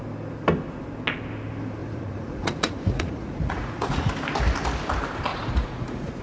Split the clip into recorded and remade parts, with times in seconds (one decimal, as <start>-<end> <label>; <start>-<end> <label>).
0.0-1.8 recorded; 1.8-4.1 remade; 4.1-5.3 recorded; 5.3-6.2 remade